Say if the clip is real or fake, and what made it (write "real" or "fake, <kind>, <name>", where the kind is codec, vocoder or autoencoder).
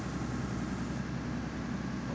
real